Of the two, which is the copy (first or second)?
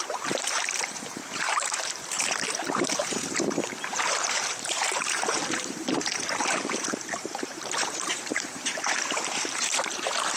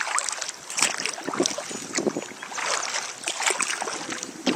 first